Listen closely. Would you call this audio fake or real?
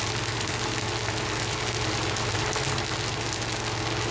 real